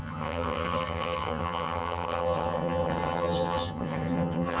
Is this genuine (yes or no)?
no